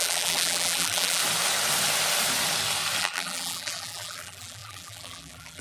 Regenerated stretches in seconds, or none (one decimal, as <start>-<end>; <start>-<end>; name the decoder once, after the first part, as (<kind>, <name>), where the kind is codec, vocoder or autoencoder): 0.0-1.2 (vocoder, BigVGAN v2); 3.0-5.6